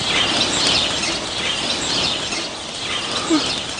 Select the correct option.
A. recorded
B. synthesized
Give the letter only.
A